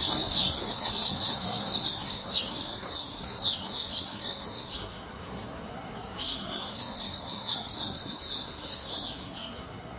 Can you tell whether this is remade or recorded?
remade